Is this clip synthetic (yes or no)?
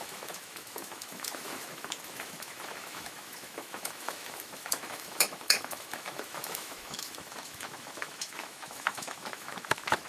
yes